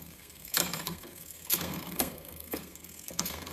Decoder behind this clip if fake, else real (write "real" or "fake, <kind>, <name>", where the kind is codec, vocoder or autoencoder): fake, codec, SNAC